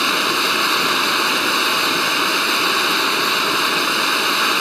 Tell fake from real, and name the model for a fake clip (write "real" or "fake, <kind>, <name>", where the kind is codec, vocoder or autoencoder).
real